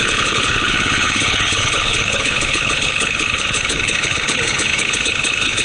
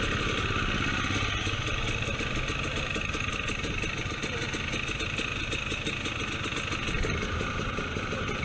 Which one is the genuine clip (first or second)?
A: second